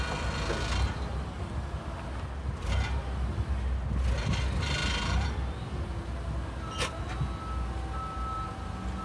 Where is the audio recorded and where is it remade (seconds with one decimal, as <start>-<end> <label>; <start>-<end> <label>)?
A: 0.0-9.0 recorded